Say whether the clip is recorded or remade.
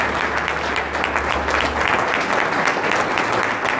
recorded